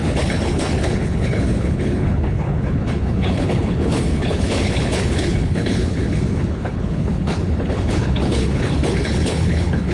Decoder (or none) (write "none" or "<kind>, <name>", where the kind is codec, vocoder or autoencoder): codec, HILCodec